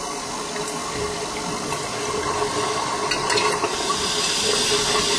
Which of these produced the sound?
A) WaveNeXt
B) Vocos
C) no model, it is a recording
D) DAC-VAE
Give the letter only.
C